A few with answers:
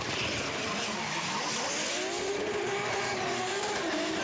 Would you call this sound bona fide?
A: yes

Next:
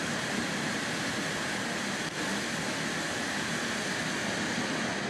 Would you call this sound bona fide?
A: yes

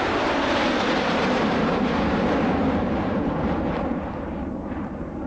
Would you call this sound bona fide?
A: no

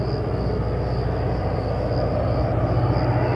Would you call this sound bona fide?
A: yes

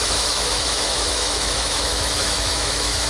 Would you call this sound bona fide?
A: no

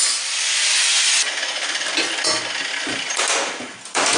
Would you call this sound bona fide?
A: yes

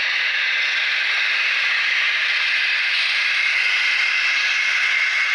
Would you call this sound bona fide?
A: yes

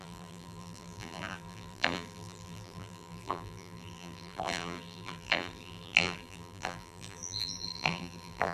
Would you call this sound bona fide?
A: no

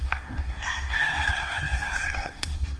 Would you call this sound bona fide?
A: no